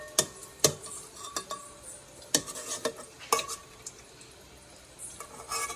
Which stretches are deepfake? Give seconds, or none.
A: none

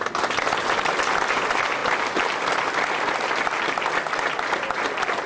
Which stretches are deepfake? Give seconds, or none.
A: none

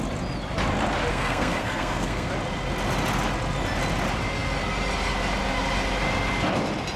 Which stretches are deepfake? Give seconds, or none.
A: 1.1-2.3 (codec, SNAC)

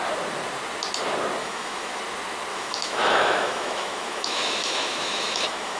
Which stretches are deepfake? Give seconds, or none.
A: 1.4-2.0 (autoencoder, DAC-VAE); 2.5-5.8

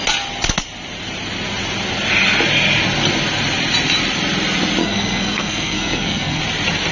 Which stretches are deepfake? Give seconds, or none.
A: 4.8-6.4 (codec, SNAC)

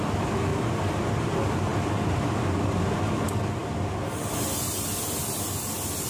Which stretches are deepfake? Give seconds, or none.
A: none

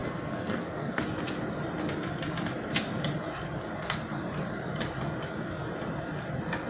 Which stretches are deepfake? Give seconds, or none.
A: 0.0-1.0 (codec, SNAC)